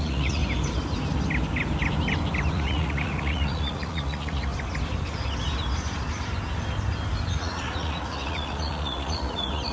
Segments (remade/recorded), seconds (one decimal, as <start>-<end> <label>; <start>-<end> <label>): 0.0-0.4 remade; 0.4-2.5 recorded; 2.5-4.5 remade; 4.5-7.3 recorded; 7.3-9.7 remade